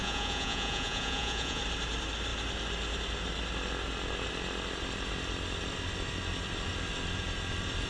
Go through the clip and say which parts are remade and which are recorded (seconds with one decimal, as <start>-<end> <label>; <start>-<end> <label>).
0.0-1.6 remade; 1.6-7.9 recorded